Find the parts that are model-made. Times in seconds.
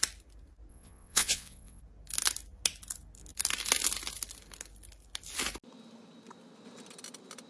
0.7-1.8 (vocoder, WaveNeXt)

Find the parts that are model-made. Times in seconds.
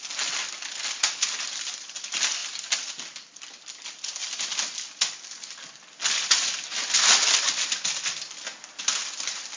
none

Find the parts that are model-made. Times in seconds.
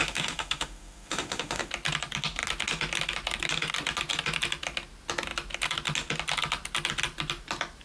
0.0-1.7 (autoencoder, DAC-VAE)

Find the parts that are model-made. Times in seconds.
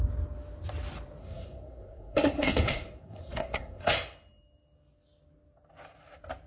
1.2-3.9 (codec, SNAC)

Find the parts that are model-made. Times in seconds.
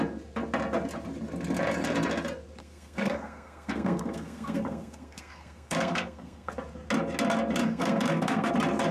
2.6-6.5 (codec, SNAC); 7.6-8.5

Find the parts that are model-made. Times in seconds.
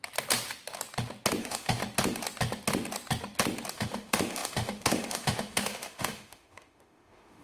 1.4-1.8 (autoencoder, DAC-VAE); 3.7-7.4